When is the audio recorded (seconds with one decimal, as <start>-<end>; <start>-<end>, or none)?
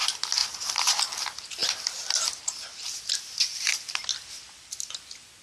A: 0.0-5.4